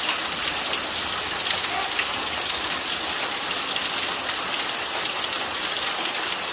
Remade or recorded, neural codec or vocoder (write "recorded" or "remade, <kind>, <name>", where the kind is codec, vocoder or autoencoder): recorded